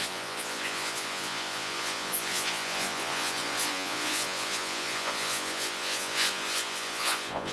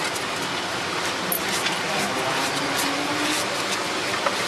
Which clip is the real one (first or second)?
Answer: second